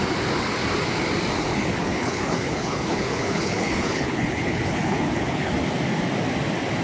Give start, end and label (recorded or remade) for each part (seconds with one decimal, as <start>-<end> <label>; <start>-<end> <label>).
0.0-1.5 recorded; 1.5-5.5 remade; 5.5-6.8 recorded